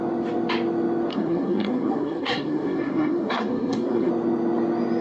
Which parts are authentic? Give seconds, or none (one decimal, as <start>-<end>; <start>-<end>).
0.0-1.1; 4.1-5.0